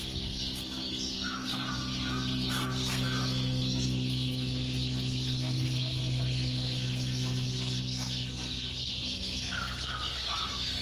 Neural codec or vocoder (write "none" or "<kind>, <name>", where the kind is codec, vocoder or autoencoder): codec, SNAC